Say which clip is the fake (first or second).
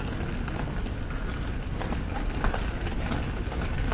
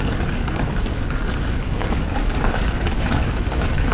second